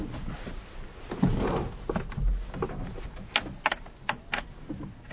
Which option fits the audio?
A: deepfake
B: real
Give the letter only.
B